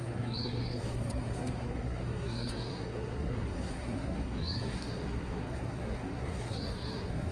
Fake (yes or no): yes